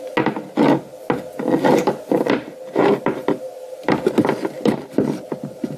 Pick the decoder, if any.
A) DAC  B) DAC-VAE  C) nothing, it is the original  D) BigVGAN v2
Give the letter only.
C